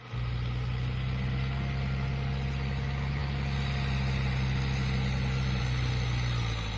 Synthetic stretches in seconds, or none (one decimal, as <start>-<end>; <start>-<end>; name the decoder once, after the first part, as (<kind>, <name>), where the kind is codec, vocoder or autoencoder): none